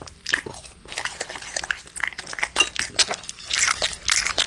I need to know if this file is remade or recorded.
recorded